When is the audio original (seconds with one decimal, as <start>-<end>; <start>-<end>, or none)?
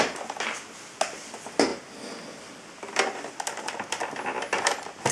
0.0-5.1